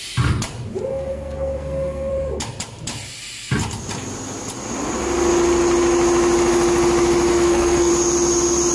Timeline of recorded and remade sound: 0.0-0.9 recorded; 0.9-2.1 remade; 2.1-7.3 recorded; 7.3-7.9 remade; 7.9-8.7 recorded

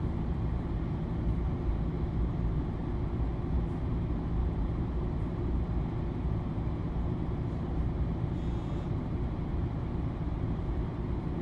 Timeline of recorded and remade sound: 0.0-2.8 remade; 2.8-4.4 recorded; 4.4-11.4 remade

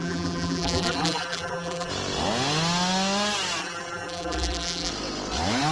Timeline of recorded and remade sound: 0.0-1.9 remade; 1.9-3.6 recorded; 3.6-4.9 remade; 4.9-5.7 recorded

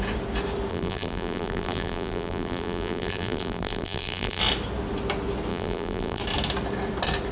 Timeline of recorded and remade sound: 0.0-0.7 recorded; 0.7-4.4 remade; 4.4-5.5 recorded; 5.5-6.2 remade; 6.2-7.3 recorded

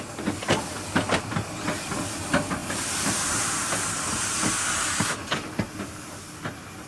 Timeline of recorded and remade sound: 0.0-6.9 recorded